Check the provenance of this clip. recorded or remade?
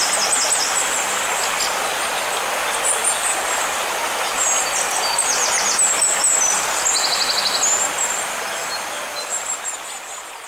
recorded